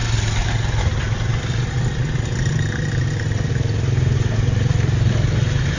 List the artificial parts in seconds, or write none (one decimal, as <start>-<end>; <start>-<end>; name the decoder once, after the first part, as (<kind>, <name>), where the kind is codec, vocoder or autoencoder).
none